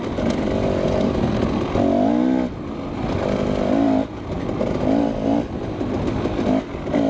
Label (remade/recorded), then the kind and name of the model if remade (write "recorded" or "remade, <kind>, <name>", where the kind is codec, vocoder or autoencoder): recorded